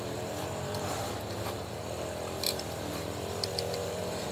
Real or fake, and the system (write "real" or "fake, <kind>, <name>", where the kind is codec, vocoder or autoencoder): fake, vocoder, BigVGAN v2